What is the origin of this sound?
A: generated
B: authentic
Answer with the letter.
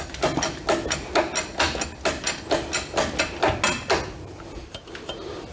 B